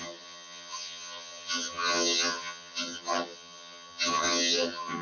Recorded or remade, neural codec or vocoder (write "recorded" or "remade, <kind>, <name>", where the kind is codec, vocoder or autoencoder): remade, vocoder, HiFi-GAN